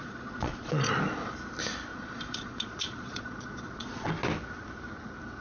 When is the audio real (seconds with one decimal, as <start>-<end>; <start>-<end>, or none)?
0.9-1.9; 4.1-5.4